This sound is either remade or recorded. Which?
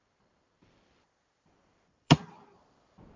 remade